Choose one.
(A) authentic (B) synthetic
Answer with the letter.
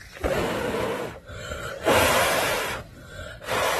B